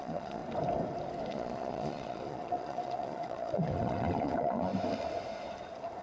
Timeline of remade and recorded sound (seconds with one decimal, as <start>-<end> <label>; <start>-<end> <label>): 0.0-0.4 remade; 0.4-1.3 recorded; 1.3-4.7 remade; 4.7-6.0 recorded